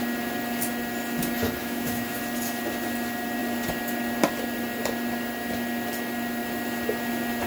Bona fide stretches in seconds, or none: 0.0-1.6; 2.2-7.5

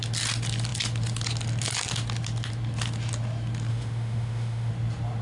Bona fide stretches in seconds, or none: 0.0-3.7; 4.7-5.2

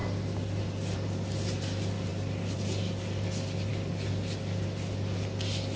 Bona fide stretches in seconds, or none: 0.0-5.8